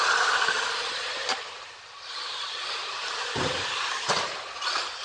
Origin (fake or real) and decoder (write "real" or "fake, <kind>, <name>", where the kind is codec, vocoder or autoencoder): fake, vocoder, BigVGAN v2